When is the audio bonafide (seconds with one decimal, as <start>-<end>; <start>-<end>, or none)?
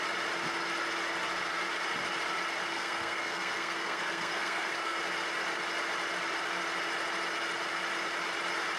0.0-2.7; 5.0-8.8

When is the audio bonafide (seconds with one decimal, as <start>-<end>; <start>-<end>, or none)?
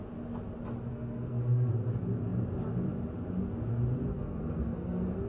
0.0-0.9; 1.7-4.1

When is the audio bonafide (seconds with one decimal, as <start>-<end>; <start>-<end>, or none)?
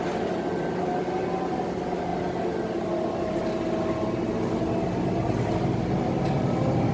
0.0-6.9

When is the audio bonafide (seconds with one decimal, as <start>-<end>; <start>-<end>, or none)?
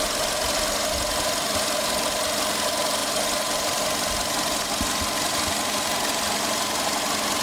0.0-7.4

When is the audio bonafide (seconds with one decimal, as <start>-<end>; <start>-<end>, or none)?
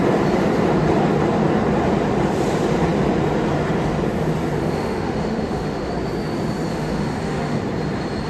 0.0-4.6; 5.9-6.7; 7.6-8.3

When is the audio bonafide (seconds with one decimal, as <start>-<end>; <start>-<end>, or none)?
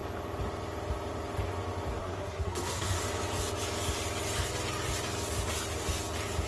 0.0-2.0; 3.0-6.5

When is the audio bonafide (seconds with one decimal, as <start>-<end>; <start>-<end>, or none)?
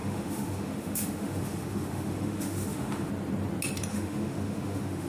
3.1-3.9